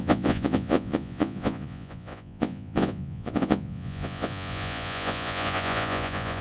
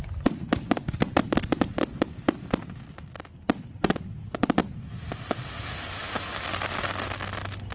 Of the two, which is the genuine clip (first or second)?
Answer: second